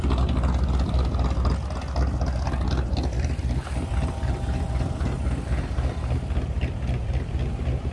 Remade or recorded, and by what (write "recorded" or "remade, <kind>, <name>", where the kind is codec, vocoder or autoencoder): recorded